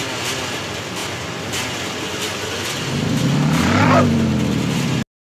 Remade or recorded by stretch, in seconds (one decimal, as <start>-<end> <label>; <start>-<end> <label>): 0.0-5.2 recorded